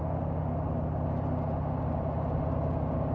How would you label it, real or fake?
real